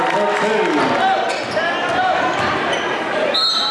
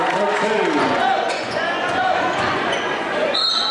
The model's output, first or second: second